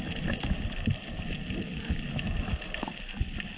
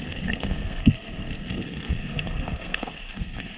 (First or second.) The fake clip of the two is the second